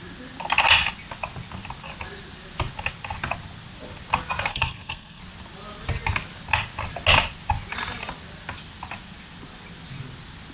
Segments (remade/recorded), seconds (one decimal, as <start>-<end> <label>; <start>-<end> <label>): 0.0-4.5 recorded; 4.5-5.2 remade; 5.2-10.5 recorded